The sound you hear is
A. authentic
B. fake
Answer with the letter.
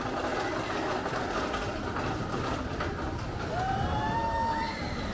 A